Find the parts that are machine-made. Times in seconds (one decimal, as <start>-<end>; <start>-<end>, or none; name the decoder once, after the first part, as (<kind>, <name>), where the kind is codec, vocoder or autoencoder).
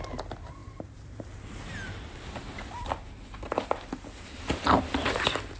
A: 0.6-1.3 (vocoder, BigVGAN v2)